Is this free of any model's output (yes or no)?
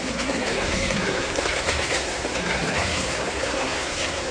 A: no